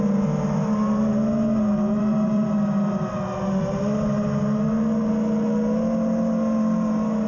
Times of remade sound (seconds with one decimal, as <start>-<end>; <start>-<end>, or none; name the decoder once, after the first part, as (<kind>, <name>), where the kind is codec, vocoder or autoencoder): none